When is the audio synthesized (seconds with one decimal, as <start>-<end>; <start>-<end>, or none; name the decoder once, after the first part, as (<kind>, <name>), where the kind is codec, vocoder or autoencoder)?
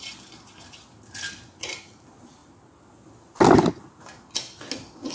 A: none